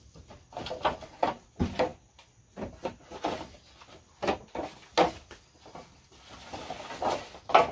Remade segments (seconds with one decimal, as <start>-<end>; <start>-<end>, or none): none